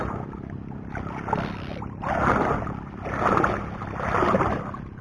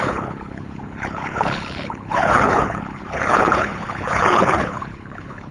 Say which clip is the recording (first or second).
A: first